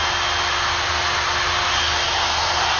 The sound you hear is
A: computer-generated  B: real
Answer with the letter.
B